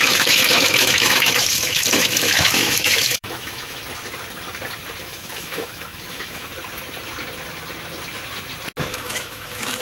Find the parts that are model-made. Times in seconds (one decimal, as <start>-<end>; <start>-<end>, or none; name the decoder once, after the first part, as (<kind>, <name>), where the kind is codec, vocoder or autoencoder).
0.0-3.8 (autoencoder, DAC-VAE); 5.0-6.5; 8.9-9.8

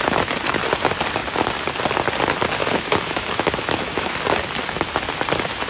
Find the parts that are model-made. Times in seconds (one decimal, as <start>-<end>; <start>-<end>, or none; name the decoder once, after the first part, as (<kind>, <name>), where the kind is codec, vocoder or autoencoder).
2.6-4.2 (autoencoder, DAC-VAE)